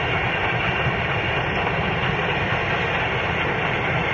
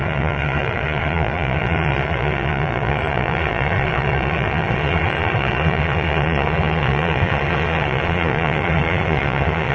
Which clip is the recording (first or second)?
first